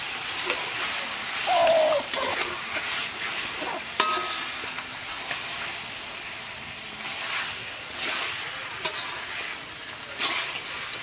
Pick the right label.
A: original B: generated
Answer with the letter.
A